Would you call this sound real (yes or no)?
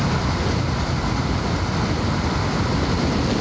yes